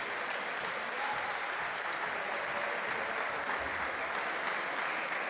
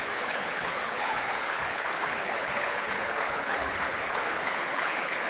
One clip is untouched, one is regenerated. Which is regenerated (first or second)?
second